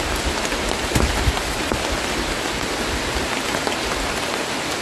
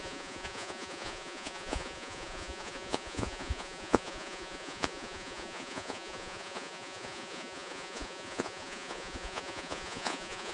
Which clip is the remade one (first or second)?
second